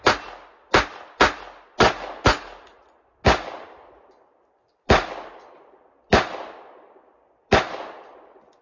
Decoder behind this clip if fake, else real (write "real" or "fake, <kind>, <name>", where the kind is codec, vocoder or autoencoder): real